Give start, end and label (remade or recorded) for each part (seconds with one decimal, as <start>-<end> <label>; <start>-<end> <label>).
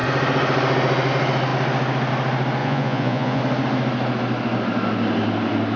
0.0-2.6 recorded; 2.6-3.4 remade; 3.4-5.8 recorded